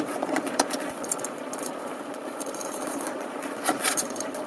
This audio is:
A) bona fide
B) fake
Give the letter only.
B